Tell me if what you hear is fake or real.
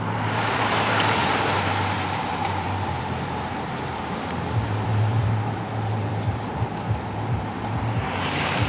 fake